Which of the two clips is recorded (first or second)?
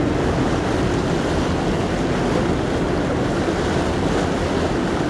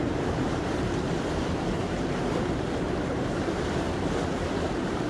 first